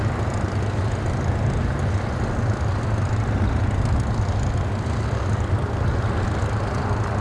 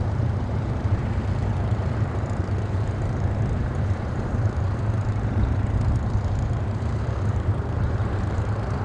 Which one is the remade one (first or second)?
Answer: second